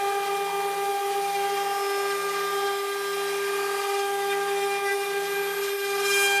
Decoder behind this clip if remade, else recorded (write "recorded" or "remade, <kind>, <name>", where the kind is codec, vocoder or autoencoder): recorded